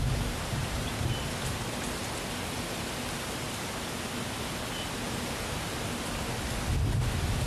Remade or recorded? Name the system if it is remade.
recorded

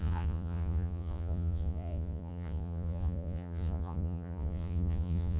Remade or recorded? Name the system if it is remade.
remade, vocoder, Vocos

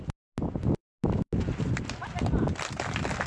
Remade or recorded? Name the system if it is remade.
recorded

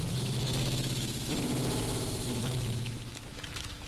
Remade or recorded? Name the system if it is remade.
remade, autoencoder, DAC-VAE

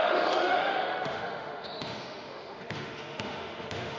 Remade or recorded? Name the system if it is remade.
remade, autoencoder, DAC-VAE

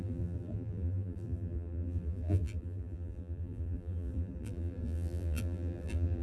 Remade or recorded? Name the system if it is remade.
remade, vocoder, BigVGAN v2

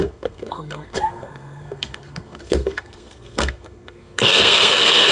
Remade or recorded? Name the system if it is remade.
remade, codec, SNAC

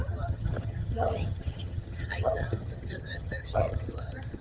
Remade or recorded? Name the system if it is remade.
remade, vocoder, HiFi-GAN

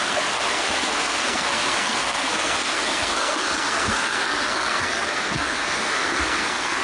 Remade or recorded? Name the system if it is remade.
remade, codec, SNAC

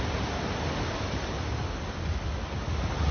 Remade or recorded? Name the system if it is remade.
recorded